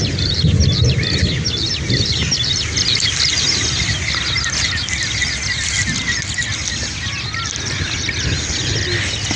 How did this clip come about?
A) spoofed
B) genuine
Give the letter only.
B